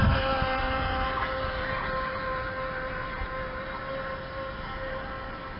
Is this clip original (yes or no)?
yes